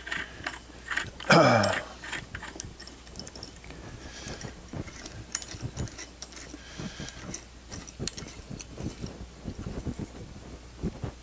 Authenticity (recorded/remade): recorded